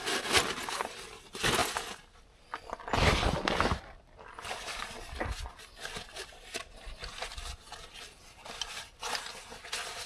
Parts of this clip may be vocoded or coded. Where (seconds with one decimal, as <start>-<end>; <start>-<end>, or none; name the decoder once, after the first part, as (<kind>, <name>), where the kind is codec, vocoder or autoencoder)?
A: none